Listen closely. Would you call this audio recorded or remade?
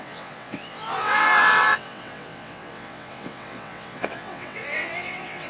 remade